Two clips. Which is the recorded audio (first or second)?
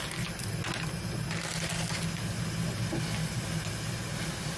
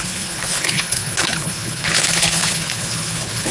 first